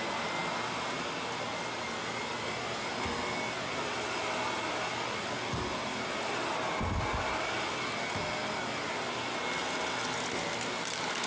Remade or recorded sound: recorded